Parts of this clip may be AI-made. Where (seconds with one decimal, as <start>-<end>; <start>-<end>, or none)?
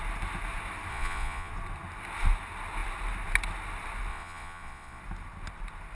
0.9-1.5; 4.1-5.0